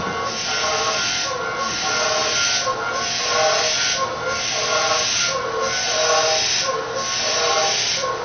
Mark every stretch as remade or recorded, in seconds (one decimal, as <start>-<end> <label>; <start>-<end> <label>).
0.0-8.2 recorded